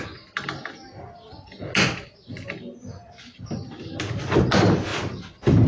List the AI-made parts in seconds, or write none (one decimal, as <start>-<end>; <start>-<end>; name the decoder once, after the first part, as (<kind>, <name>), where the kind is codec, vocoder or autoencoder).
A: none